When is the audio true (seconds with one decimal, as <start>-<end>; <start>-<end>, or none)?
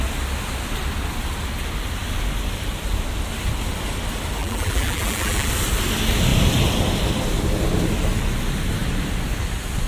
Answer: 0.0-4.4; 5.5-9.9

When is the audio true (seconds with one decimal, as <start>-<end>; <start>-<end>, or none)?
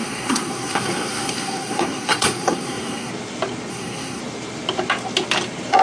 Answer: 3.1-3.7; 4.2-5.8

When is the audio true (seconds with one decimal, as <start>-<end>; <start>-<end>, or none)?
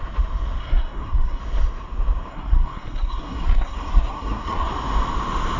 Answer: 0.0-0.6; 1.4-2.3; 4.7-5.6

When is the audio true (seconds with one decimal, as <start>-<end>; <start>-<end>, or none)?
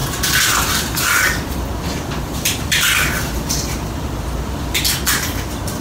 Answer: 3.5-5.8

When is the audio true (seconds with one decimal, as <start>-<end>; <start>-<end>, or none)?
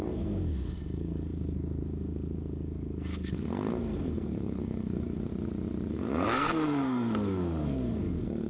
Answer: 5.3-5.9